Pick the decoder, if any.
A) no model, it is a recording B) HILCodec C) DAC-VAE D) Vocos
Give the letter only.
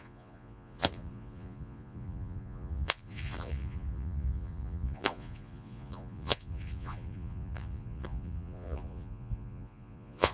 D